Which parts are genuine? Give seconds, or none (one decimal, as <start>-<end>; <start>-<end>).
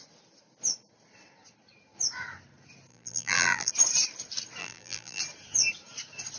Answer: 0.0-2.9; 3.7-4.6; 5.2-6.4